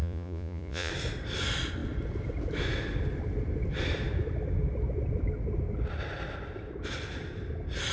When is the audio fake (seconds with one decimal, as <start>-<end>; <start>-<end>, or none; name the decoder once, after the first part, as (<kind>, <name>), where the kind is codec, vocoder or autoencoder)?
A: 0.0-0.9 (vocoder, Vocos)